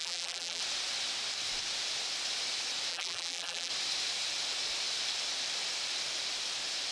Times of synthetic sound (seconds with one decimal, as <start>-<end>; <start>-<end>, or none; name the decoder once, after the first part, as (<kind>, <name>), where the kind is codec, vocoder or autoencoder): 0.0-0.6 (vocoder, BigVGAN v2); 2.9-3.7